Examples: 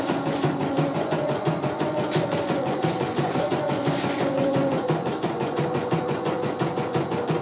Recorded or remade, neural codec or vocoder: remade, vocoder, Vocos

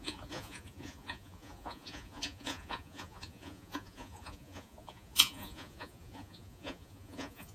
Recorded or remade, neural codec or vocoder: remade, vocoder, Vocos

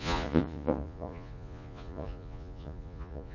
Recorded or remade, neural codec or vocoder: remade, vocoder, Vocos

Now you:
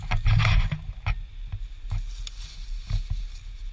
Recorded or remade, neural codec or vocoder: recorded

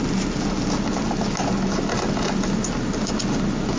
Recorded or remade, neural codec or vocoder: recorded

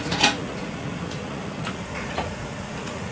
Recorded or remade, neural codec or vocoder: remade, vocoder, Vocos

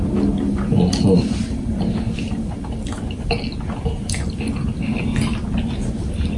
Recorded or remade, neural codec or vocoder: recorded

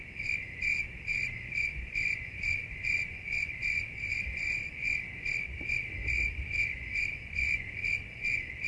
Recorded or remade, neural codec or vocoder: remade, vocoder, Vocos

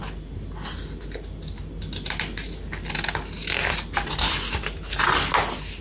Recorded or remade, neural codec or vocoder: recorded